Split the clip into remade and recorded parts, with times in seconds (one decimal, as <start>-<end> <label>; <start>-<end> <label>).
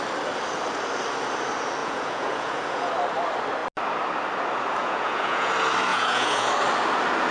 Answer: 0.0-1.8 recorded; 1.8-2.9 remade; 2.9-4.8 recorded; 4.8-5.5 remade; 5.5-5.9 recorded; 5.9-6.5 remade; 6.5-7.3 recorded